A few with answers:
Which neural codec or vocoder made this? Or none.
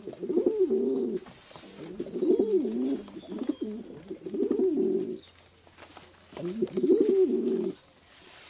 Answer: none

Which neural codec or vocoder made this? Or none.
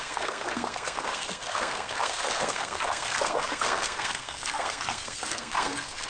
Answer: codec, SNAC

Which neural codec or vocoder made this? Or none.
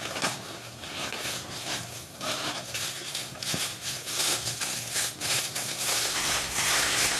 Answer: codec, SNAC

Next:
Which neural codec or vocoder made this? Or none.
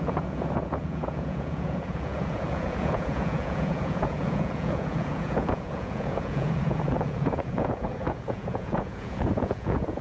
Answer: vocoder, Vocos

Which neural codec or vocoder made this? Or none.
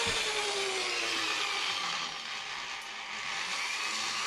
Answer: none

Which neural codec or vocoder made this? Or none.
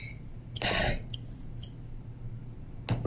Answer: none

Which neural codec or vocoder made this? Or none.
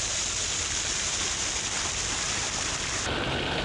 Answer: none